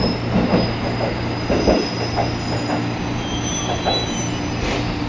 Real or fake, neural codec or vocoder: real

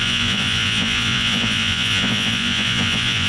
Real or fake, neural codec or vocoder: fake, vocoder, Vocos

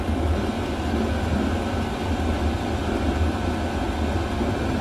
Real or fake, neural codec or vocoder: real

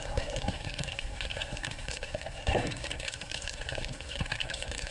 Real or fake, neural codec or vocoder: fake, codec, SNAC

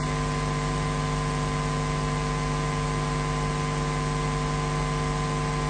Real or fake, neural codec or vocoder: real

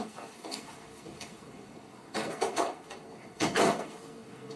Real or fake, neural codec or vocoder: fake, codec, SNAC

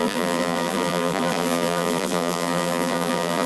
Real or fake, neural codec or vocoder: fake, vocoder, BigVGAN v2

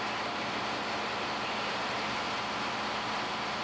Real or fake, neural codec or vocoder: real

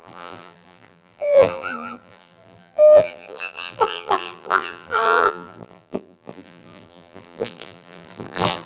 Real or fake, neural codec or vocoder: fake, vocoder, BigVGAN v2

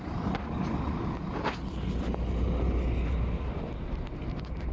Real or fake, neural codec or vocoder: real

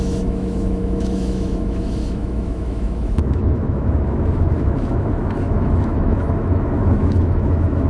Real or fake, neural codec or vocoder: fake, autoencoder, DAC-VAE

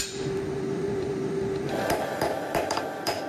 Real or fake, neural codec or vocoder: fake, vocoder, BigVGAN v2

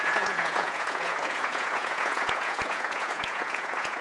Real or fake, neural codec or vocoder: fake, vocoder, Vocos